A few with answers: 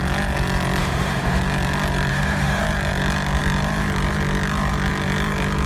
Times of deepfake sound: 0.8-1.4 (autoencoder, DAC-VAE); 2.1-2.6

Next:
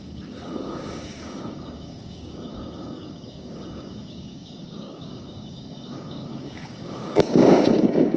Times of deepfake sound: 0.0-8.2 (codec, DAC)

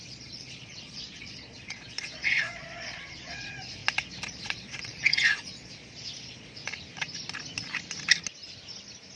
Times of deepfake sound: 0.0-3.8 (vocoder, Vocos); 4.3-6.6

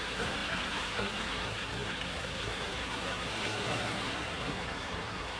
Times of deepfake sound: 0.0-5.4 (codec, SNAC)

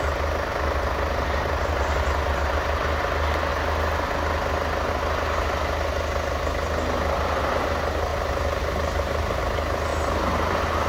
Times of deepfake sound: 0.5-2.0 (vocoder, BigVGAN v2); 8.1-9.4; 9.9-10.9

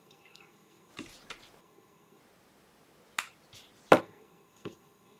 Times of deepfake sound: 0.0-0.9 (codec, SNAC); 1.6-2.2; 4.0-5.2